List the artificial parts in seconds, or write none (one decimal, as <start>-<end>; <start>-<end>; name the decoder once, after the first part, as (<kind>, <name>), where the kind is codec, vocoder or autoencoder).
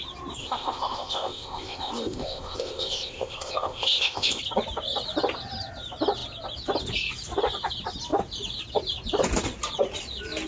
0.4-4.4 (codec, ZipCodec)